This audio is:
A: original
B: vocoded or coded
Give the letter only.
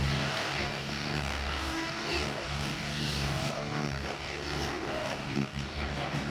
B